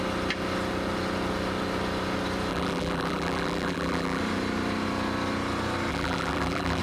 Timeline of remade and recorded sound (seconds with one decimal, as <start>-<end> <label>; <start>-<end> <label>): 0.0-2.5 recorded; 2.5-4.2 remade; 4.2-5.9 recorded; 5.9-6.8 remade